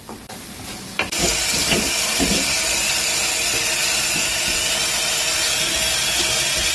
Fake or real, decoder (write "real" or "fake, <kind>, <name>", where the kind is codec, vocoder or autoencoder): real